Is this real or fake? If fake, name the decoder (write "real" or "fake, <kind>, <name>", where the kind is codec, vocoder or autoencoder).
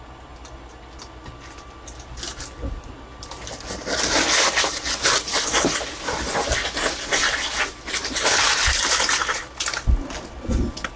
real